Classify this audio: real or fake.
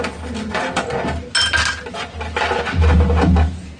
real